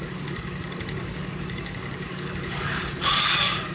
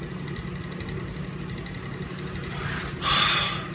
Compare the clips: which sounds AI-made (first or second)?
first